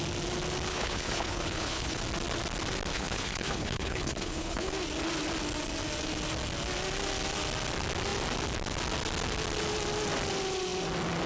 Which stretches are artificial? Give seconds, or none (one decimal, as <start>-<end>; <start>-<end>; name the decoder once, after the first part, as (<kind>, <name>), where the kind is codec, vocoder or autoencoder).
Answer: 0.7-2.0 (codec, HILCodec); 2.9-4.7